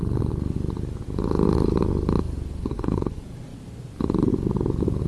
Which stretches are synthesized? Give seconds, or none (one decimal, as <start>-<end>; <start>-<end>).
2.6-3.1